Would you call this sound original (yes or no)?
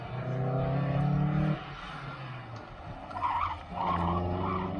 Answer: yes